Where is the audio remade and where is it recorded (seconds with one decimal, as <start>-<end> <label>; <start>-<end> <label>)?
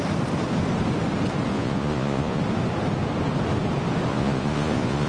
0.0-1.5 recorded; 1.5-2.4 remade; 2.4-4.1 recorded; 4.1-5.1 remade